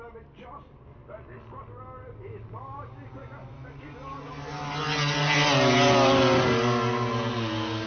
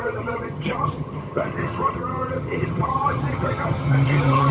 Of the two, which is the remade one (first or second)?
second